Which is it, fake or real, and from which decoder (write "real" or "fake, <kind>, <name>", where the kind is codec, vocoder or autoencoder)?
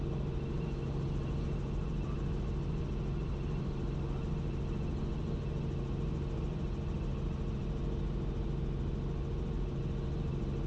real